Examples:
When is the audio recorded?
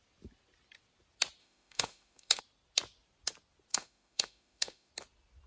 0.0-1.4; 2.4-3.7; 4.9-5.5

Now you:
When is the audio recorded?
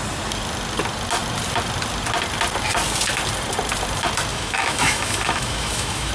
0.0-4.3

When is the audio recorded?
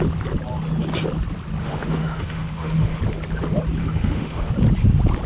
0.0-1.6; 3.0-3.8; 4.5-5.3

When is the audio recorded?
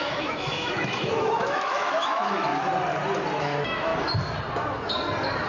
2.5-3.4; 3.9-5.5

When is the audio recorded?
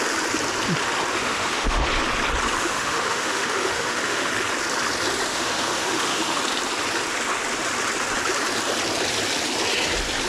0.0-1.2; 1.8-2.6; 4.3-5.3; 6.4-10.3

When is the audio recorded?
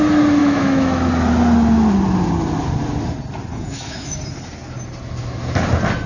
0.0-0.4; 1.1-3.5; 4.2-6.1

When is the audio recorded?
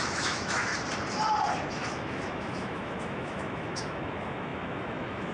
0.7-1.7